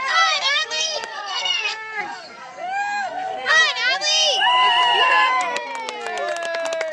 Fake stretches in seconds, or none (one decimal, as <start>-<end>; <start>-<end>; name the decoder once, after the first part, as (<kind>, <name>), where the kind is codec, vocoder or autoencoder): 0.0-3.6 (codec, SNAC); 5.0-5.7